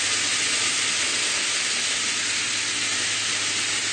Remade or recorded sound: recorded